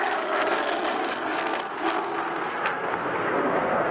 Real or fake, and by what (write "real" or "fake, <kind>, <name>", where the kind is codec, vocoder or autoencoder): fake, codec, SNAC